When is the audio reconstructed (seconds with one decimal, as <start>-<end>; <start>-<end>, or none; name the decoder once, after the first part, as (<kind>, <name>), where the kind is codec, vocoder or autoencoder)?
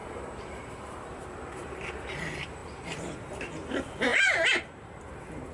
0.0-5.5 (vocoder, BigVGAN v2)